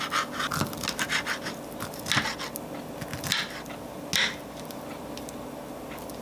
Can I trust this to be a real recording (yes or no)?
yes